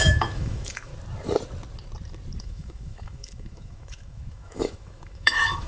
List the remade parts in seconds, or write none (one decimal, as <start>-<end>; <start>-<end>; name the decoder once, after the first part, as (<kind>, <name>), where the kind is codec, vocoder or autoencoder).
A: 0.0-0.9 (autoencoder, DAC-VAE); 2.4-5.7